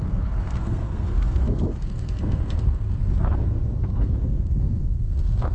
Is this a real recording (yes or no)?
no